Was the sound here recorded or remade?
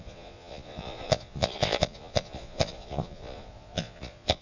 remade